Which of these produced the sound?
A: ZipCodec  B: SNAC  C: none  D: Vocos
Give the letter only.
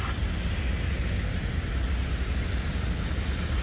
C